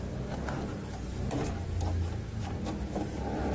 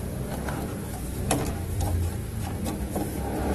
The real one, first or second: first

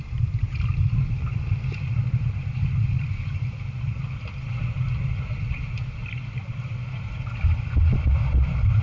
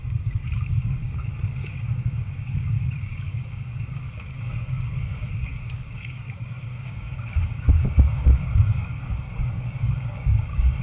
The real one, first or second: first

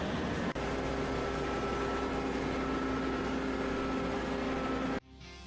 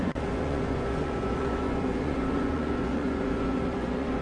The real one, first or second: first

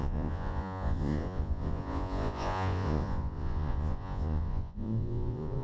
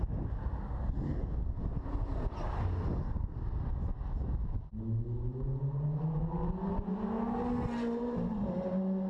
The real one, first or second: second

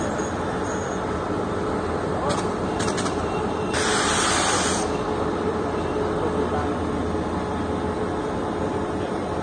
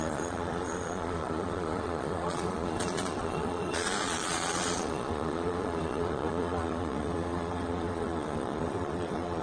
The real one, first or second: first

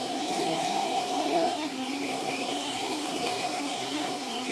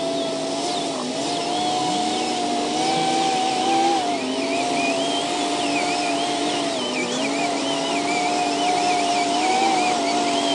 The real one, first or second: second